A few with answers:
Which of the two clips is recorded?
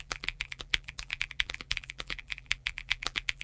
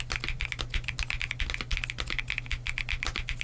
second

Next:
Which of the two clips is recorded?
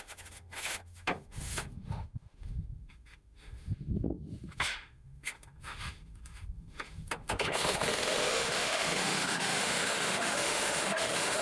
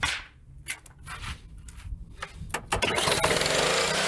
second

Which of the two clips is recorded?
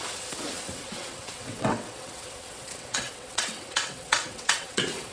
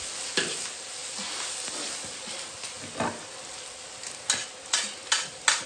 second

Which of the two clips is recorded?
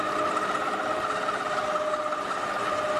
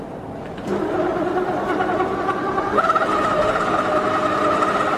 first